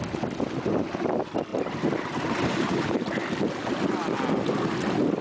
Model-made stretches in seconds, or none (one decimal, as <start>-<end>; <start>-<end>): 1.5-3.2